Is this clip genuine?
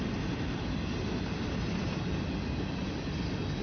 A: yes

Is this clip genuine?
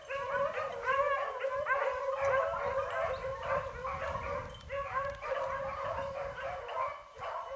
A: yes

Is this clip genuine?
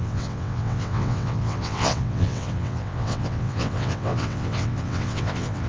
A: no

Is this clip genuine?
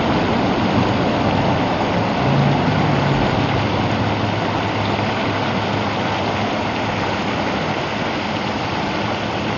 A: yes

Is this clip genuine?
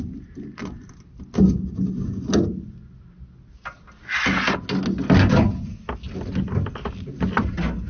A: yes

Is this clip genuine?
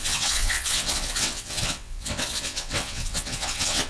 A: no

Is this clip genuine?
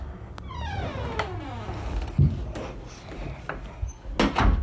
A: yes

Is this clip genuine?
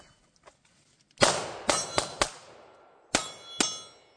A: yes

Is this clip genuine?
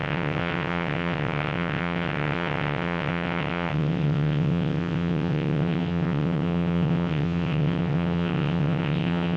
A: no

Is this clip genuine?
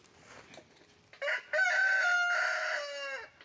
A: yes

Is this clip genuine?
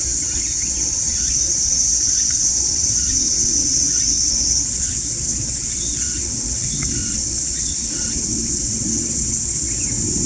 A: no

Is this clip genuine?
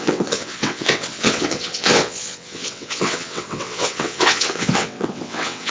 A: no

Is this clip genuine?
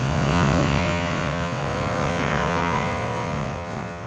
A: no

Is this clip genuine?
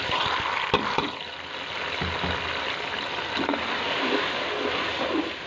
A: yes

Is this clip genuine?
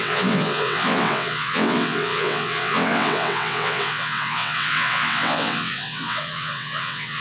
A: no